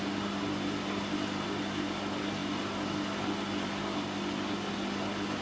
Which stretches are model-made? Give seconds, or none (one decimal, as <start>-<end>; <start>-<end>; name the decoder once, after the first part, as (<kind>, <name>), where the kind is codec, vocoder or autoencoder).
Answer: none